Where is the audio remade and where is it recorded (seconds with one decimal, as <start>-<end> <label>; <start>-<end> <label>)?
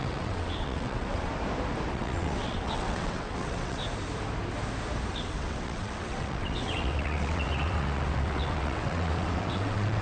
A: 0.0-1.3 remade; 1.3-1.9 recorded; 1.9-3.8 remade; 3.8-5.1 recorded; 5.1-10.0 remade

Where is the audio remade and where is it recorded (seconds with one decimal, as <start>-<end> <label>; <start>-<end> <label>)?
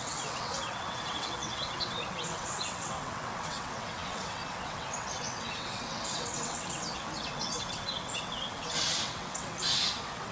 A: 0.0-10.3 remade